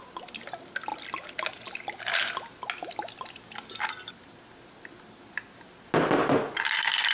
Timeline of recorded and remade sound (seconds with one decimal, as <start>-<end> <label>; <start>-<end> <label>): 0.0-7.1 recorded